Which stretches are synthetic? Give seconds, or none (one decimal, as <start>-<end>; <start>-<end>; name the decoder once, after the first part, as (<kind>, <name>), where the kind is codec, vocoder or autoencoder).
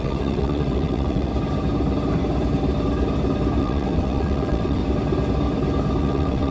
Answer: 0.0-1.3 (vocoder, WaveNeXt); 3.6-4.8; 6.0-6.5